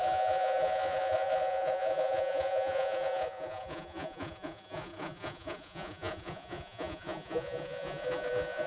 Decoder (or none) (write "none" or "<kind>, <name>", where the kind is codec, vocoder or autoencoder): vocoder, Vocos